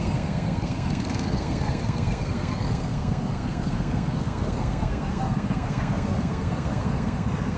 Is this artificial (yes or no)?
yes